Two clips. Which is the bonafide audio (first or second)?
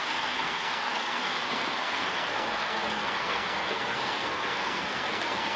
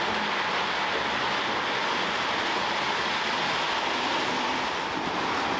second